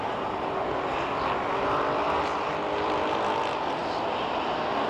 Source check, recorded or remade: recorded